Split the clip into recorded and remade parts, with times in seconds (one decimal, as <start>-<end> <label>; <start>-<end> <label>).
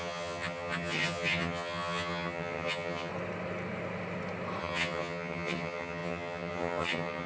0.0-3.1 remade; 3.1-4.6 recorded; 4.6-7.3 remade